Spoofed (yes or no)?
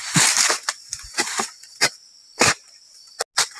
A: no